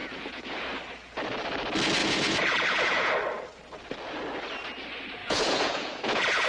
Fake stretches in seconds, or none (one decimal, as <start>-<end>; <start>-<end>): 0.0-0.6; 2.0-3.1; 5.2-6.5